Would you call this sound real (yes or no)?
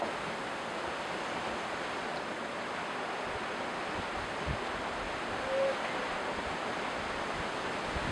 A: yes